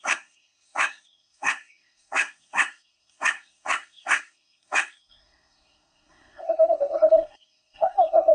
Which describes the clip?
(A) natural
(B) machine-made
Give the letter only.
B